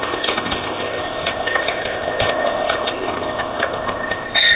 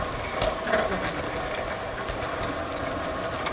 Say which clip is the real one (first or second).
second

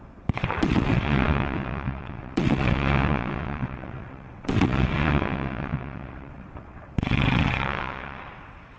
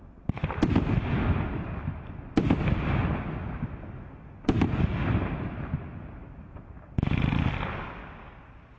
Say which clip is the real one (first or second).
second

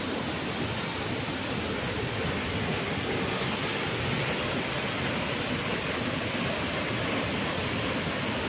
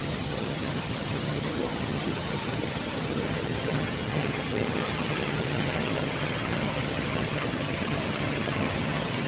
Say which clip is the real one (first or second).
first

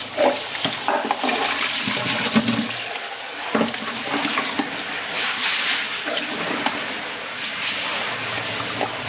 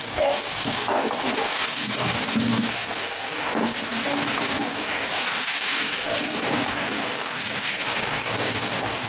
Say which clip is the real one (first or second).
first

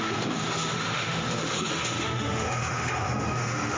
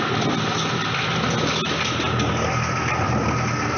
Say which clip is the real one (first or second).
second